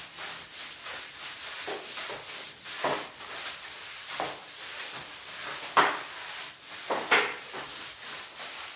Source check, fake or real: real